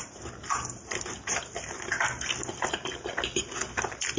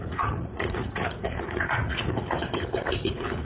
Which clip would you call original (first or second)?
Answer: first